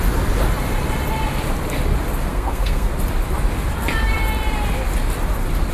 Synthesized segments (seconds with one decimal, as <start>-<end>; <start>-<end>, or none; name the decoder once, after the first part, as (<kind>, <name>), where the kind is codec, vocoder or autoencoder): 2.3-2.9 (codec, SNAC)